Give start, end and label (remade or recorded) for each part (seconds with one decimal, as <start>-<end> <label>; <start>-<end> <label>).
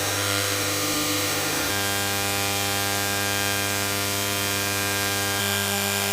0.0-1.7 remade; 1.7-5.4 recorded; 5.4-6.1 remade